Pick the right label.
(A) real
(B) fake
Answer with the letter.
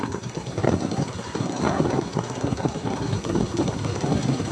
B